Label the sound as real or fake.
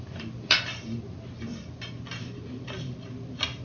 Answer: real